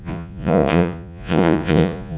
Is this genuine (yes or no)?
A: no